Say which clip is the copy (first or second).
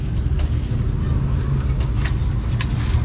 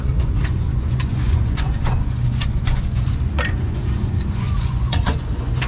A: second